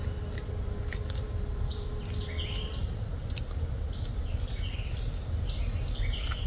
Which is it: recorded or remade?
recorded